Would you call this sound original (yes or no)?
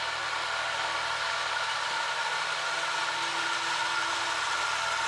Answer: yes